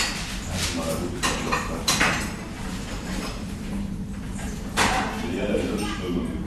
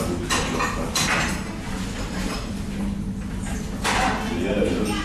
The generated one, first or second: first